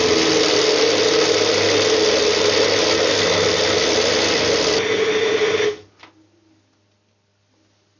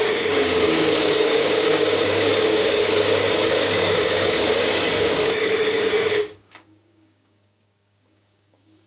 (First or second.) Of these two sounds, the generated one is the second